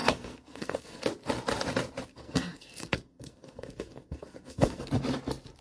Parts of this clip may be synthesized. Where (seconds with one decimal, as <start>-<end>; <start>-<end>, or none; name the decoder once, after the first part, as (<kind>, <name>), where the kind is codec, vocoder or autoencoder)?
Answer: 0.0-1.0 (codec, SNAC); 2.1-4.9